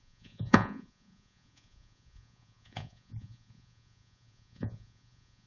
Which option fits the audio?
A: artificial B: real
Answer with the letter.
A